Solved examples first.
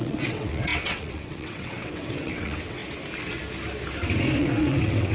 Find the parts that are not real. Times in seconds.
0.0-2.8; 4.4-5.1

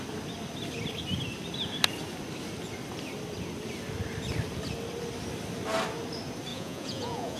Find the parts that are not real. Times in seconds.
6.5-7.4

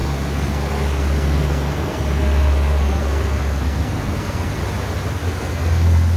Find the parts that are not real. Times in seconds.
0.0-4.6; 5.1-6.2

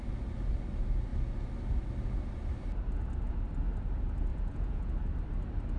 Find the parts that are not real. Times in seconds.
4.3-4.9